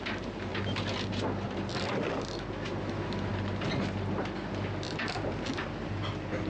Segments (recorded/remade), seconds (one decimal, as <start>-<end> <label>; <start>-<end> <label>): 0.0-6.5 recorded